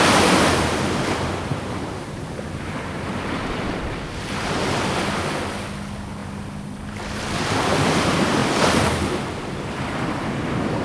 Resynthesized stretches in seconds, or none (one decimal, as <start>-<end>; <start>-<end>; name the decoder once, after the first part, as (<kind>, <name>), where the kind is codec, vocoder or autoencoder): 1.5-4.5 (vocoder, BigVGAN v2)